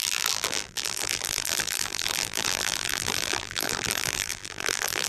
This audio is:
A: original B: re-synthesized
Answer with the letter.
B